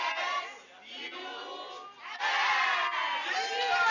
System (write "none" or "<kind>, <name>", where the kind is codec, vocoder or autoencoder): none